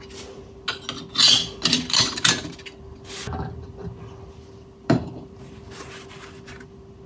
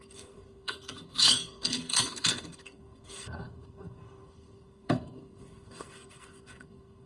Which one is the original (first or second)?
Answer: first